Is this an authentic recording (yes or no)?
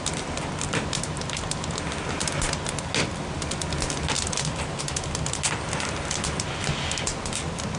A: yes